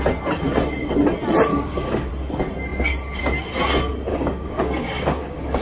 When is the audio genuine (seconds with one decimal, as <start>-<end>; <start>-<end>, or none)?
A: 0.0-1.5; 2.1-4.1

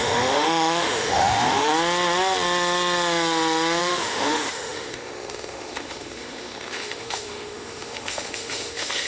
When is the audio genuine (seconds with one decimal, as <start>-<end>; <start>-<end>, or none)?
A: 1.7-3.8

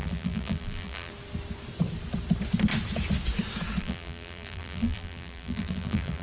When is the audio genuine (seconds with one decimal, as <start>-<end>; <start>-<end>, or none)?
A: 1.1-3.8

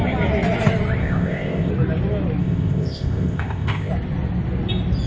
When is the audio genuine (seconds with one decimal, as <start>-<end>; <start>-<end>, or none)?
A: 0.0-1.0; 1.7-2.4; 3.9-5.1